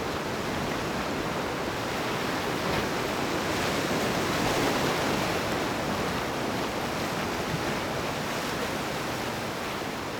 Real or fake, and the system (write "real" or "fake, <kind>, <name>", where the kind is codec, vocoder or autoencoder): real